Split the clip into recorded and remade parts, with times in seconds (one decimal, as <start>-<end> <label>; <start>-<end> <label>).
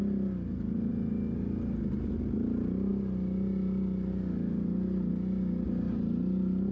0.0-6.7 recorded